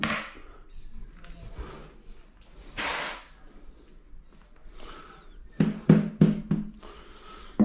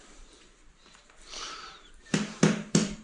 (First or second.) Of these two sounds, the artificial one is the second